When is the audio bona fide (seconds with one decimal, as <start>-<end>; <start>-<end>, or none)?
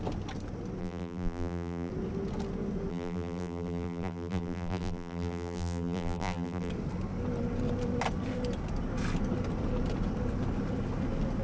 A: 0.0-0.8; 1.9-2.9; 6.7-11.4